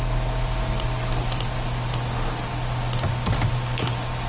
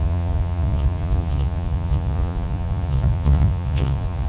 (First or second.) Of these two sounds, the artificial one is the second